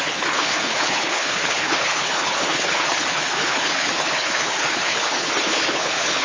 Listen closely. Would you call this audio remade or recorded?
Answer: remade